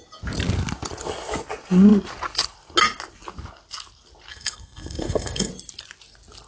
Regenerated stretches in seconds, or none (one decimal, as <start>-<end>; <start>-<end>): 4.3-5.5